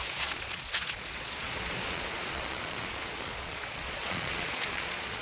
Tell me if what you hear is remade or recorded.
remade